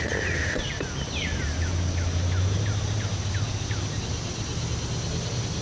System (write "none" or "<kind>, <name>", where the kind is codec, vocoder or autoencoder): none